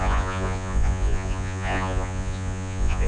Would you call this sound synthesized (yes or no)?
yes